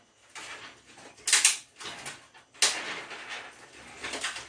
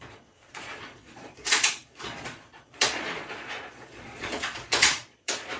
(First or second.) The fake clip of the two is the second